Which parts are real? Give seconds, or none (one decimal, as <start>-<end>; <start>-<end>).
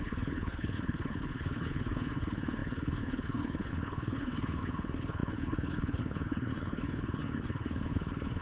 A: none